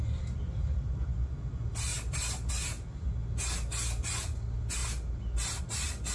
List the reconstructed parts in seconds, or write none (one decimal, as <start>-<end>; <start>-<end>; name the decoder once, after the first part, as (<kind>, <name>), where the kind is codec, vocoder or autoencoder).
none